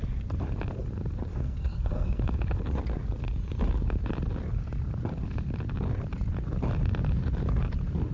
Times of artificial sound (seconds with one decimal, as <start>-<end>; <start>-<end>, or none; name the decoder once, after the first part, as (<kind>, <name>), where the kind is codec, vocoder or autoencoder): 1.3-2.4 (codec, SNAC)